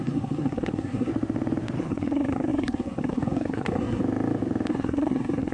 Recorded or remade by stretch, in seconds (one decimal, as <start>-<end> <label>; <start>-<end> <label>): 0.0-1.1 remade; 1.1-1.8 recorded; 1.8-4.0 remade; 4.0-4.7 recorded; 4.7-5.5 remade